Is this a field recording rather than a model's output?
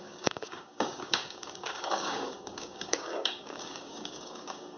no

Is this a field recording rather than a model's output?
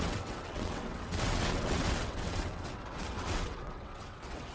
no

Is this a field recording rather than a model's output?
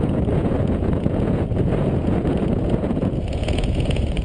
no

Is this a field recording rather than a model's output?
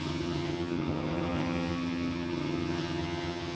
no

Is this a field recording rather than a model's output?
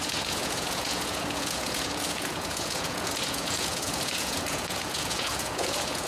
no